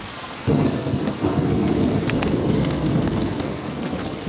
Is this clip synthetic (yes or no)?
yes